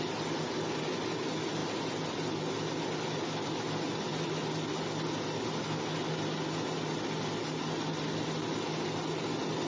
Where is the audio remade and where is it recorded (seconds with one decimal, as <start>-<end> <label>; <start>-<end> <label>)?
0.0-9.7 recorded